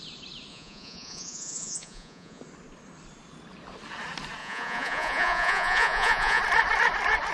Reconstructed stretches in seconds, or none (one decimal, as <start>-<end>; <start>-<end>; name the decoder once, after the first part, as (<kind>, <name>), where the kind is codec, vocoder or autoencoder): 0.5-2.4 (vocoder, Vocos); 4.4-6.4